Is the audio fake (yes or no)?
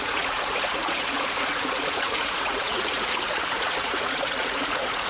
yes